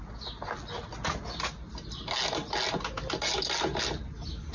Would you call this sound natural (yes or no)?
yes